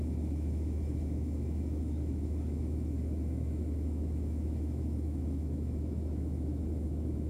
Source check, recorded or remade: remade